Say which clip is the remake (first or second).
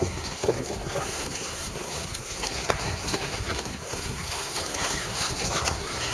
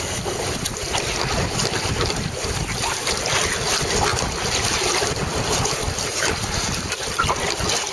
first